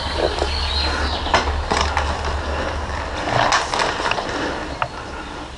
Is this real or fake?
real